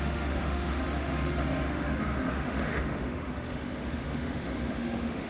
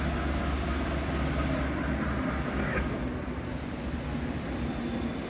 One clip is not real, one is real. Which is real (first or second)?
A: second